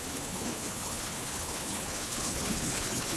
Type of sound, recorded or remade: remade